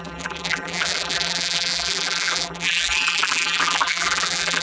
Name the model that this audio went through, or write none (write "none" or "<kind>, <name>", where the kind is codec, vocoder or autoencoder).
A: vocoder, BigVGAN v2